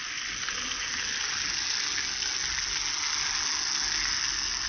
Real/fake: real